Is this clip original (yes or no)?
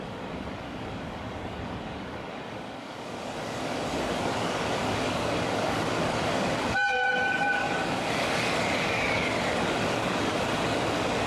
no